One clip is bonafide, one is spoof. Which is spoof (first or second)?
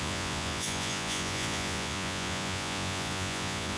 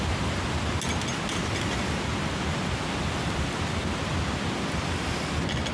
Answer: first